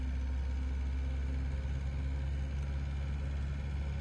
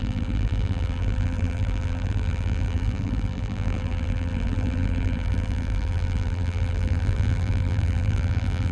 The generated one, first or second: second